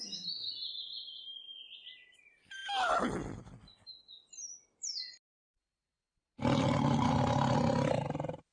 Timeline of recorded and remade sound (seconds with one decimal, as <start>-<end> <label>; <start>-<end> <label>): 0.0-8.5 recorded